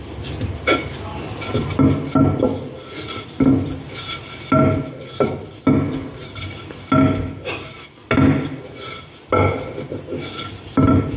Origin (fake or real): real